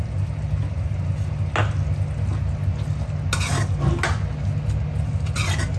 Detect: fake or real real